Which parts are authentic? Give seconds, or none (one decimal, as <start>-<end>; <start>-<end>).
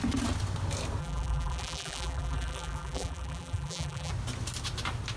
0.0-1.0; 4.1-5.2